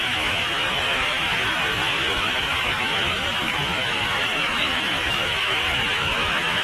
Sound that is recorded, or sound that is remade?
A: remade